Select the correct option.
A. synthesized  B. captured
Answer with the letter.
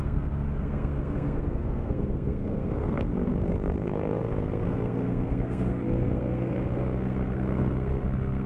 A